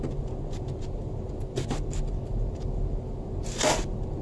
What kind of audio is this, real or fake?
real